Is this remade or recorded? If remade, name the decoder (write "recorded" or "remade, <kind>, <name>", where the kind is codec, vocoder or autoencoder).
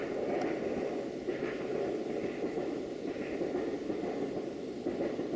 recorded